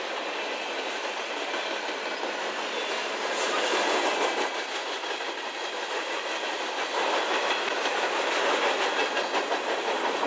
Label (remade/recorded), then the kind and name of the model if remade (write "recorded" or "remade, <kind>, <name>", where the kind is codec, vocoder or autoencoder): recorded